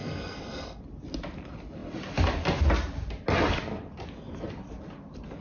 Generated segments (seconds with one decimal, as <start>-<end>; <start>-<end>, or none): 0.0-0.8